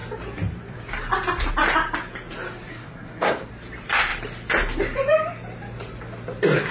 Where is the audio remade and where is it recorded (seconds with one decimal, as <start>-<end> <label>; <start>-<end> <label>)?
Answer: 0.0-2.7 recorded; 2.7-3.5 remade; 3.5-6.7 recorded